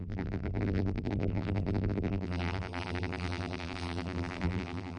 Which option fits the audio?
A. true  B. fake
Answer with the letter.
B